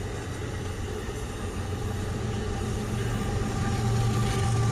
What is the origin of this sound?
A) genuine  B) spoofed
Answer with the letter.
A